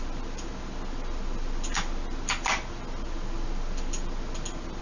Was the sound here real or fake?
real